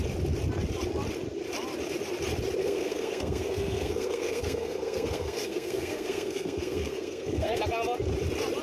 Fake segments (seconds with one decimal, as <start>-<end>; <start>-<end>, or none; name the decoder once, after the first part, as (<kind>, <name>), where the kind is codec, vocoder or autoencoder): 2.6-7.6 (codec, SNAC)